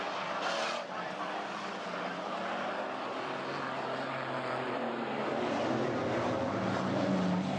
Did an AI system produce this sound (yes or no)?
no